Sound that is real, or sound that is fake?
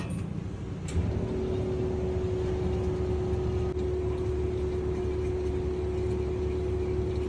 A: real